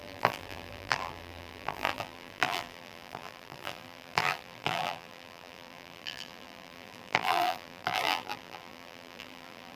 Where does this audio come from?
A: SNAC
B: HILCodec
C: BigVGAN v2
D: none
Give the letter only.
C